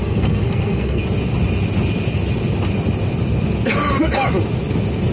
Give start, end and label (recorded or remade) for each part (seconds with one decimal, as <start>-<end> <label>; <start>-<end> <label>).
0.0-1.0 remade; 1.0-5.1 recorded